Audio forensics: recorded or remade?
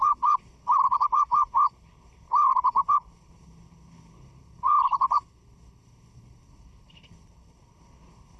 remade